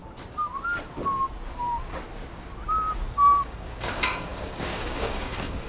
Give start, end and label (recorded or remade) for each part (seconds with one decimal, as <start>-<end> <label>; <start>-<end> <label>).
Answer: 0.0-3.4 recorded; 3.4-5.7 remade